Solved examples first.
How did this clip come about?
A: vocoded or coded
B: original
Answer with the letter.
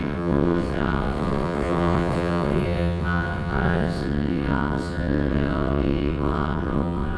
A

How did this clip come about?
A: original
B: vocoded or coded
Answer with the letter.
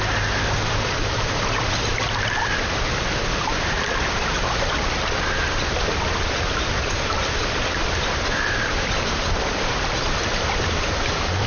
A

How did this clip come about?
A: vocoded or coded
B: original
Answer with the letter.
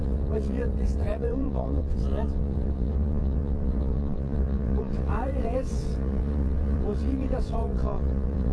A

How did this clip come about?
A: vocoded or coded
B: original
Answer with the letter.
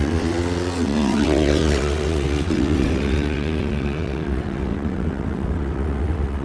A